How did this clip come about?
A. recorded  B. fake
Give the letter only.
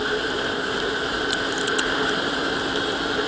B